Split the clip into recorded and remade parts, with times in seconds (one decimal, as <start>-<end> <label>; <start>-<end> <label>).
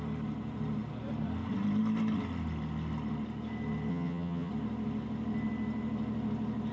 0.0-3.9 recorded; 3.9-4.5 remade; 4.5-6.7 recorded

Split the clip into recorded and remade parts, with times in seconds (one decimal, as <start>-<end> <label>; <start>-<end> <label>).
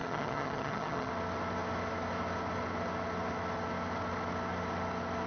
0.0-1.1 remade; 1.1-5.3 recorded